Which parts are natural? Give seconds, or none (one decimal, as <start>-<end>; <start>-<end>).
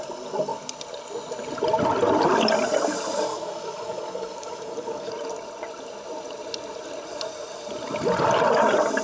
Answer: 0.0-3.3; 5.1-9.0